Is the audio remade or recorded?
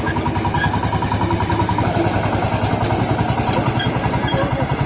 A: recorded